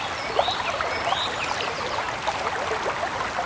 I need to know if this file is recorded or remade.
recorded